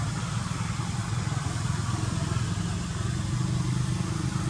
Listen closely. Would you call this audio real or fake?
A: real